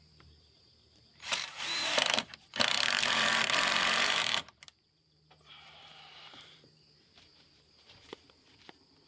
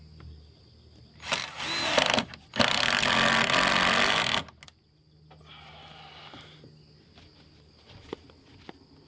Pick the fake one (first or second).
first